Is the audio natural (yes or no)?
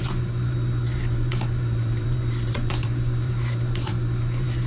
no